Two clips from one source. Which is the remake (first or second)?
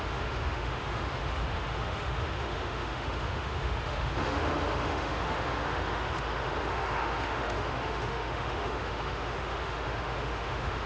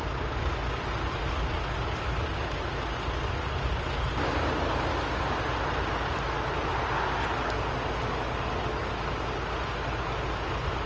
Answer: first